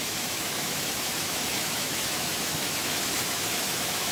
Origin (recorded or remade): remade